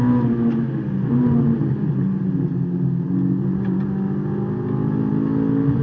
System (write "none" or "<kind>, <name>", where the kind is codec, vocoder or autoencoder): none